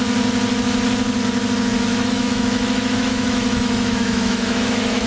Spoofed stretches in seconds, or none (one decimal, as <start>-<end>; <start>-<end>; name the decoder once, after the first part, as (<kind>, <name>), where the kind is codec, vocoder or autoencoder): 1.9-5.1 (autoencoder, DAC-VAE)